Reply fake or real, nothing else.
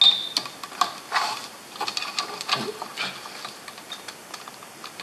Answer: real